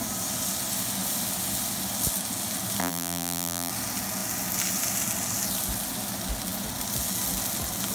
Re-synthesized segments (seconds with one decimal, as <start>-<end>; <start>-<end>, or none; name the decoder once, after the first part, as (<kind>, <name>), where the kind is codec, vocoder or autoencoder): 2.8-3.7 (vocoder, BigVGAN v2)